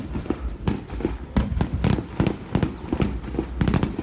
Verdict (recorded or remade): recorded